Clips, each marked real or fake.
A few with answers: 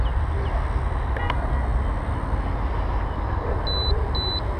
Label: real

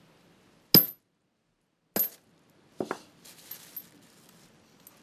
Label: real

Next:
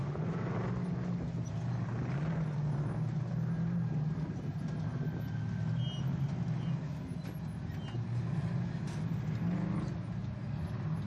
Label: real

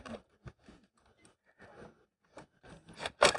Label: real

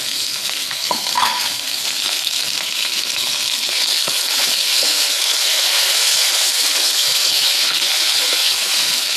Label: fake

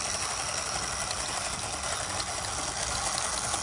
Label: real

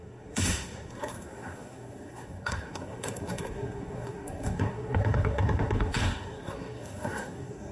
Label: fake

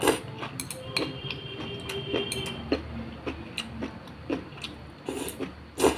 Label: real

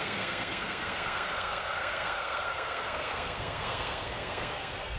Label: fake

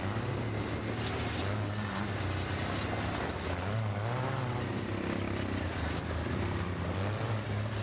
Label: real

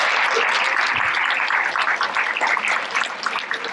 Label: real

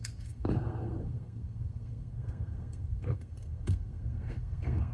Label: fake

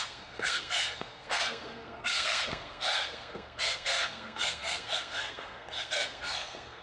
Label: fake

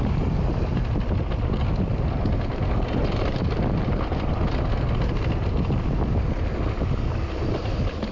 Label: real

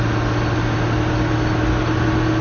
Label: real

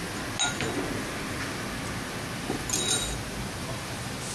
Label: real